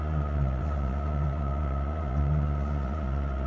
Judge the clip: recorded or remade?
remade